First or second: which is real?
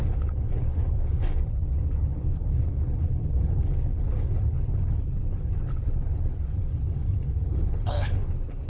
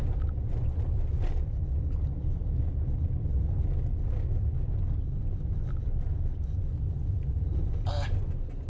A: second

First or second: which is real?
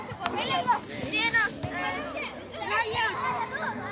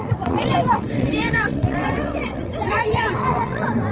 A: first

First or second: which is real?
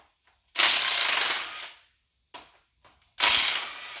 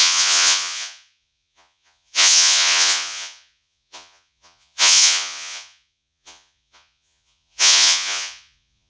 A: first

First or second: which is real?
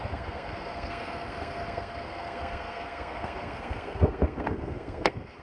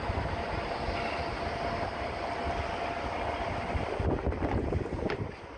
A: second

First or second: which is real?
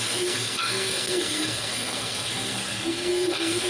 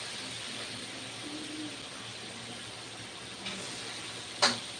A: second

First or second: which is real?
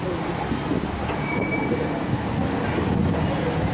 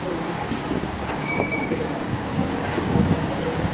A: first